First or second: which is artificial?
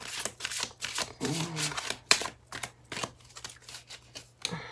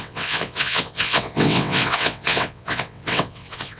second